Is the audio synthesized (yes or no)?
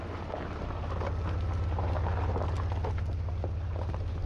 no